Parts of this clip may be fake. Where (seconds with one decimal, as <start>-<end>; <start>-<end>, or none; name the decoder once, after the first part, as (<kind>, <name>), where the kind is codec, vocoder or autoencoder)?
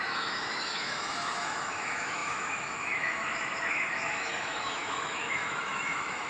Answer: 0.0-6.3 (autoencoder, DAC-VAE)